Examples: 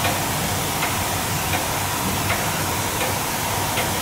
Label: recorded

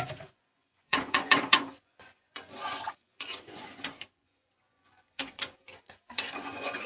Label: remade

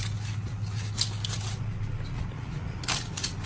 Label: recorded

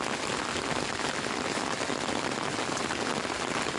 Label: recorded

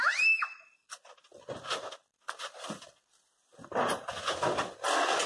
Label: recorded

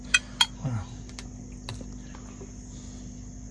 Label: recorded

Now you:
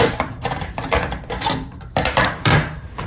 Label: remade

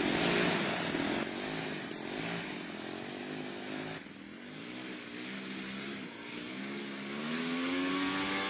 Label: recorded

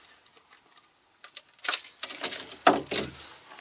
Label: recorded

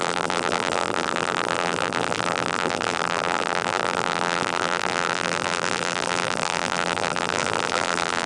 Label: remade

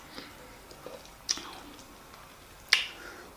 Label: recorded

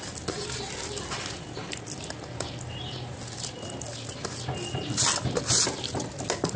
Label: recorded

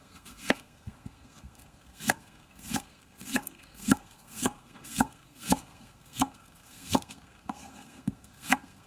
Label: remade